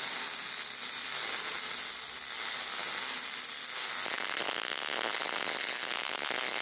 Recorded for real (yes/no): yes